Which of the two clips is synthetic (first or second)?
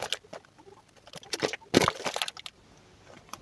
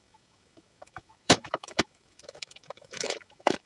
second